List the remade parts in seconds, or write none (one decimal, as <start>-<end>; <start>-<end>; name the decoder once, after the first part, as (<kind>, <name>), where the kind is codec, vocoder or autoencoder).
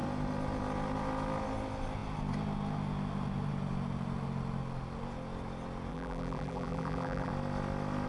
5.9-7.3 (vocoder, BigVGAN v2)